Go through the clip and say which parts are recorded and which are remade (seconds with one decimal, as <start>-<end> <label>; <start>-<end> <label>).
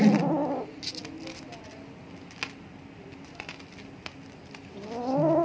0.0-5.4 recorded